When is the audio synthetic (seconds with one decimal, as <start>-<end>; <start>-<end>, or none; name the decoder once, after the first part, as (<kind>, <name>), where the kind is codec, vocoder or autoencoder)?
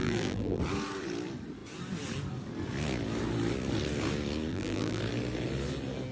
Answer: 0.0-0.6 (vocoder, BigVGAN v2); 4.5-5.0